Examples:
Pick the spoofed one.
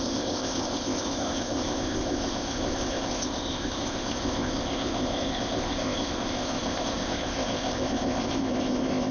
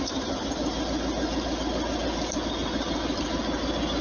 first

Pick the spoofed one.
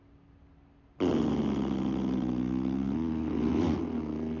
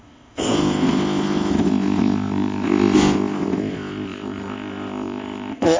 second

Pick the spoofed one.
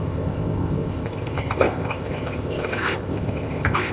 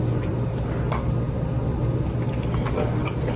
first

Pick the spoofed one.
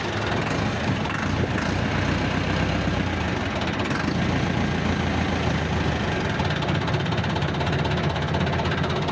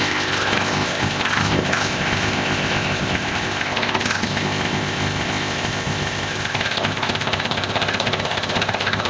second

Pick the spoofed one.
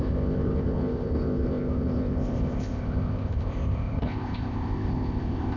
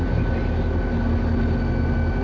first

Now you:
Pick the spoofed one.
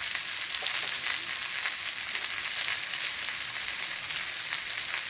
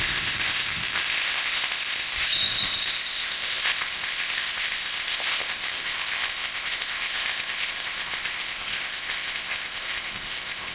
second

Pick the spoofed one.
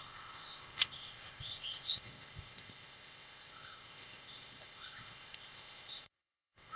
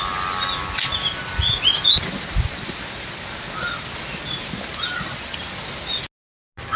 first